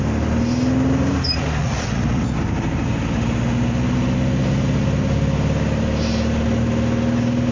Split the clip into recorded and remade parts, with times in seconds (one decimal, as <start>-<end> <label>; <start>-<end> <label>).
0.0-1.6 recorded; 1.6-2.3 remade; 2.3-7.5 recorded